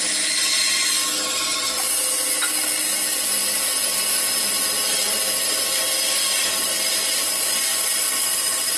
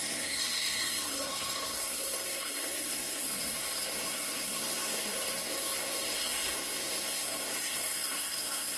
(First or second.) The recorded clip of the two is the first